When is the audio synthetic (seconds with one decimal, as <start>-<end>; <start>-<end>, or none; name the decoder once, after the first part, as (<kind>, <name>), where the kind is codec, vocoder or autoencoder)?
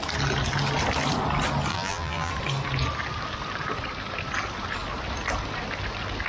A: 1.7-2.3 (vocoder, BigVGAN v2)